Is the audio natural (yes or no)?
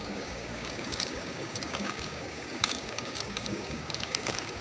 no